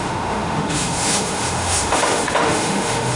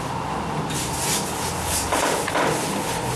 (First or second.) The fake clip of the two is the first